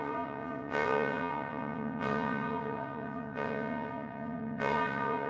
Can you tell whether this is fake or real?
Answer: fake